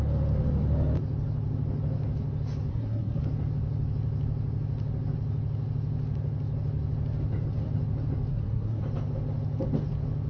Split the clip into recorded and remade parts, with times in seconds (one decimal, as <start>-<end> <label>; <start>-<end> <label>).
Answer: 0.0-2.7 recorded; 2.7-3.2 remade; 3.2-8.3 recorded; 8.3-8.8 remade; 8.8-10.3 recorded